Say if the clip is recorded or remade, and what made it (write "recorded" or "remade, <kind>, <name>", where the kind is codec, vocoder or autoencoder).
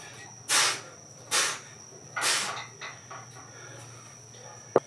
recorded